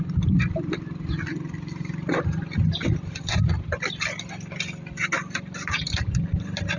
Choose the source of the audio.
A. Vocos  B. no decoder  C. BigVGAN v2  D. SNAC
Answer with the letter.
B